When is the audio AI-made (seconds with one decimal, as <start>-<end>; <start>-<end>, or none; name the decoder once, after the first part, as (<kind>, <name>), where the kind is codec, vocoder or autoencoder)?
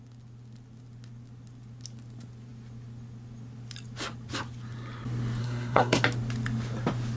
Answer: 5.4-6.0 (codec, SNAC)